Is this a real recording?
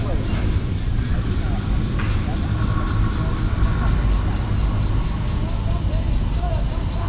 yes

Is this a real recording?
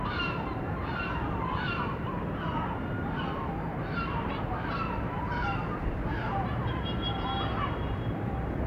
no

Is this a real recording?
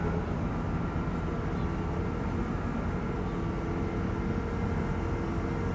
yes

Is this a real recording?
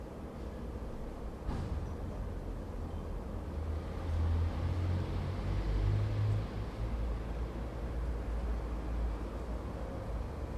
yes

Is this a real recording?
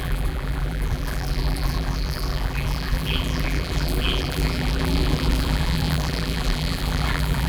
no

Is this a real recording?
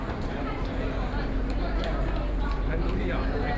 yes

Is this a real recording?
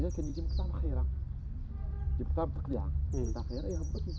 no